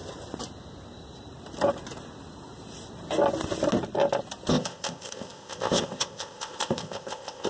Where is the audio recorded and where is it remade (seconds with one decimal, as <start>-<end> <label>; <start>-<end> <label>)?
0.0-4.5 recorded; 4.5-7.5 remade